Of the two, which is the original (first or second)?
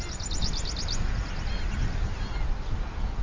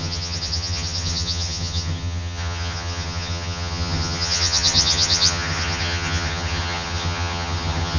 first